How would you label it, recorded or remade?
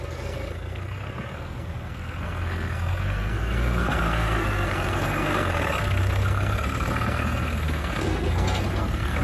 remade